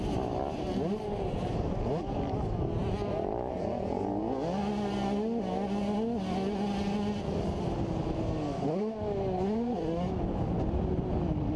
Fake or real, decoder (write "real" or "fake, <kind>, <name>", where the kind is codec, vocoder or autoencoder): real